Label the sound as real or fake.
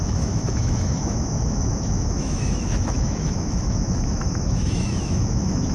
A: fake